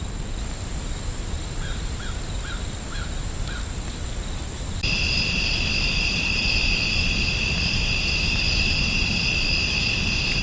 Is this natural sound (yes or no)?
yes